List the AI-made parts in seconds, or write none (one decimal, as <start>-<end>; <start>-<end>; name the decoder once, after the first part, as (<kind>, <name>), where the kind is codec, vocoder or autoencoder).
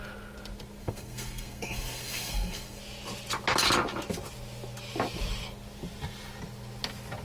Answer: 0.8-2.8 (codec, SNAC)